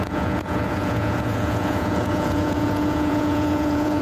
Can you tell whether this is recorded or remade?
remade